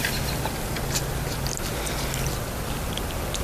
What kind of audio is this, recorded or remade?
recorded